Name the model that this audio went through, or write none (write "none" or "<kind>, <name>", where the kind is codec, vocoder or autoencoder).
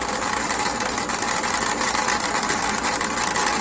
none